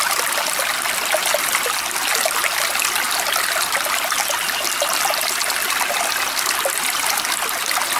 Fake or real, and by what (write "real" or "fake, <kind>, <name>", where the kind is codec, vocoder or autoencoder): real